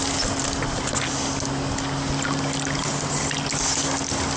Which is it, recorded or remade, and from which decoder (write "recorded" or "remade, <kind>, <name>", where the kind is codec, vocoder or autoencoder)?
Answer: recorded